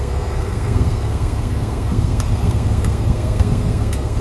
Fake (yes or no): yes